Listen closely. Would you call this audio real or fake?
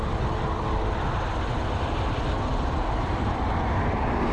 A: real